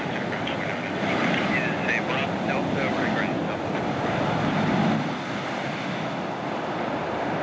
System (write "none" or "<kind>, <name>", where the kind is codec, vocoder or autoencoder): none